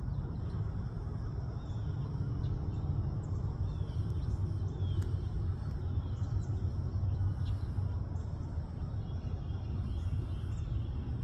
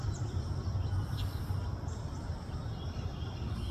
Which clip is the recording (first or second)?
first